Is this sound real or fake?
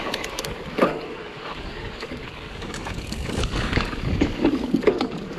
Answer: fake